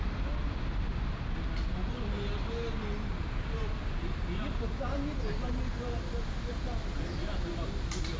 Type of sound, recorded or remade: recorded